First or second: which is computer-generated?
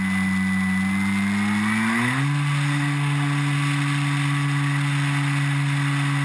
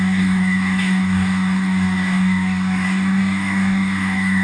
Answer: second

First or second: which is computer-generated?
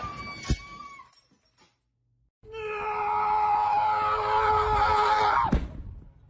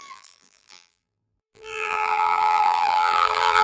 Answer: second